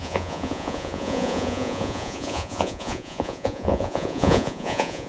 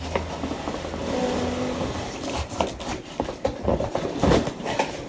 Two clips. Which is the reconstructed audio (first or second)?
first